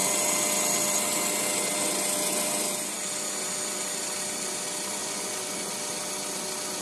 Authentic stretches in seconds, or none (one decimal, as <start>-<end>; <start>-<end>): 0.0-5.0; 5.7-6.8